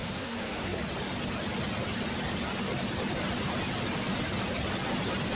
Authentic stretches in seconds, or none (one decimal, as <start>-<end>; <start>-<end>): 0.8-5.3